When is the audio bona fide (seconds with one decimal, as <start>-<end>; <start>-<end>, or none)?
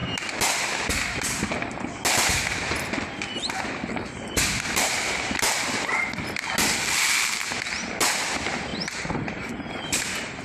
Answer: 0.0-8.7; 9.7-10.4